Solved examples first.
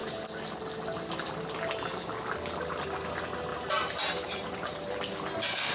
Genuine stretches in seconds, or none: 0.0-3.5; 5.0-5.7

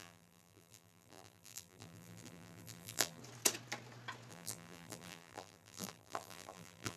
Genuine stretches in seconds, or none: 3.2-4.3

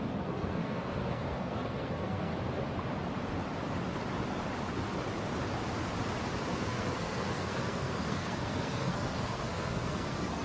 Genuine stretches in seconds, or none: 2.3-6.5

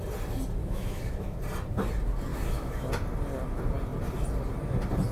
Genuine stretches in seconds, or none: 0.0-0.6; 1.4-2.3; 2.9-5.1

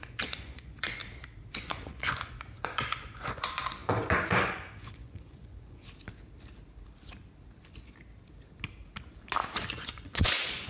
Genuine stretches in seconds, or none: 1.0-1.6; 5.8-9.7